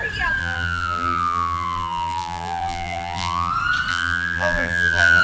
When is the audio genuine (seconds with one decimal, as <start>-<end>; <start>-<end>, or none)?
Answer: 0.0-0.4; 3.5-3.9